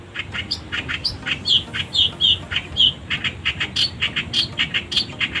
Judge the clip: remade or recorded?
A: recorded